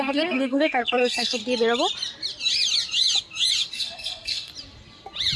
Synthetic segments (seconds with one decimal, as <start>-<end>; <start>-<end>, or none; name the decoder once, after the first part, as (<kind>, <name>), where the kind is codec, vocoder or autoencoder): 0.0-1.4 (codec, SNAC); 3.7-4.5